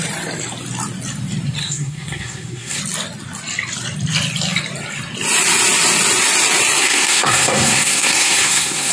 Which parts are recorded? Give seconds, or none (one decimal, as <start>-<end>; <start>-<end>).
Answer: 0.0-1.6; 2.8-6.8